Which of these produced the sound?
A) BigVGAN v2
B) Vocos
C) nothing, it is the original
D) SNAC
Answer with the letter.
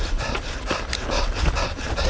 C